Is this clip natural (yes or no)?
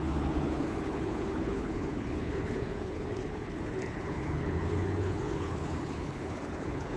no